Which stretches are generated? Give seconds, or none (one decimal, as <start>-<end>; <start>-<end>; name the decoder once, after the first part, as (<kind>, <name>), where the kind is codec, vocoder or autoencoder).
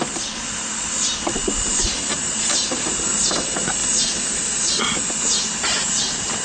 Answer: none